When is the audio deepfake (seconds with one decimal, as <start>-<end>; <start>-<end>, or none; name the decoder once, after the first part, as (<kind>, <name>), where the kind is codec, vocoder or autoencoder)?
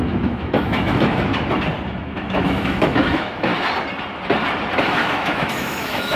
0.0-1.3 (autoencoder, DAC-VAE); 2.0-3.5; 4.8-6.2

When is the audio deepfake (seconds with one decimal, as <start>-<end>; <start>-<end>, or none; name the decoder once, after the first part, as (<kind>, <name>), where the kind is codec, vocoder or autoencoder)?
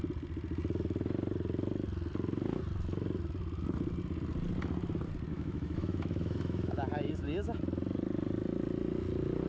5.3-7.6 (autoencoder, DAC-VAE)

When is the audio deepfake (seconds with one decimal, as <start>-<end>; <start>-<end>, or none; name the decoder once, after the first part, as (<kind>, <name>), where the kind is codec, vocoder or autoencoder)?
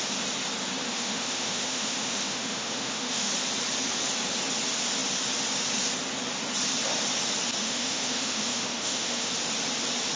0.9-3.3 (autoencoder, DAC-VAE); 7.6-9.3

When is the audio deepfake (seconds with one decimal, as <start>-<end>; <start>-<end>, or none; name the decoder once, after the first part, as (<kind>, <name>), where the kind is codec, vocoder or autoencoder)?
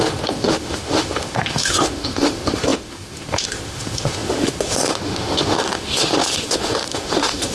0.0-7.5 (autoencoder, DAC-VAE)